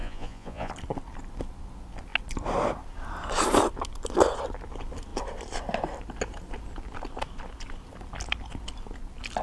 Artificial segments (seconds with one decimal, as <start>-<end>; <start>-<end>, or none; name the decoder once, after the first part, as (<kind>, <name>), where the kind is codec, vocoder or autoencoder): 0.0-0.7 (vocoder, Vocos)